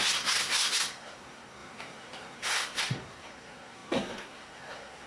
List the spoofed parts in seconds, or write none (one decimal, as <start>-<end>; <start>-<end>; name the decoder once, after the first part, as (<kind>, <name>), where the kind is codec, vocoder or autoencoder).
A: 0.0-5.1 (codec, SNAC)